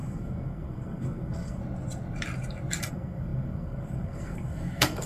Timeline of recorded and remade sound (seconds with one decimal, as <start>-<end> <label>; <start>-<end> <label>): 0.0-1.6 remade; 1.6-2.9 recorded; 2.9-5.1 remade